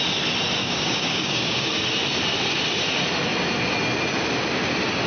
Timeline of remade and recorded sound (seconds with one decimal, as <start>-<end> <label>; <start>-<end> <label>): 0.0-0.6 recorded; 0.6-1.7 remade; 1.7-5.1 recorded